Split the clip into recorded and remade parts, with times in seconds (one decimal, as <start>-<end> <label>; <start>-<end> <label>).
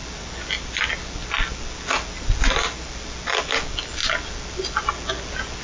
0.0-5.6 recorded